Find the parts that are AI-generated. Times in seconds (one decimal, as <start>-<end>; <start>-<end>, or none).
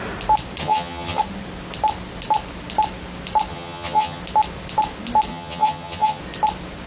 0.6-1.2; 3.5-4.2; 5.3-6.2